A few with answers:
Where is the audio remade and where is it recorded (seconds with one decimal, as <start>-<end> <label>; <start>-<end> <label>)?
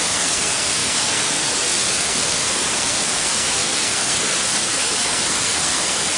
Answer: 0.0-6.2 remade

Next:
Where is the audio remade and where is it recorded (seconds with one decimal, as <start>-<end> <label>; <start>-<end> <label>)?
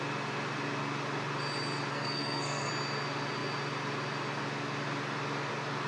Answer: 0.0-1.9 recorded; 1.9-2.7 remade; 2.7-5.9 recorded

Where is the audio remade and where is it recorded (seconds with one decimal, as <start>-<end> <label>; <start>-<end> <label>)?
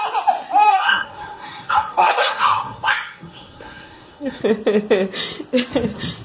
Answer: 0.0-0.7 recorded; 0.7-4.4 remade; 4.4-6.2 recorded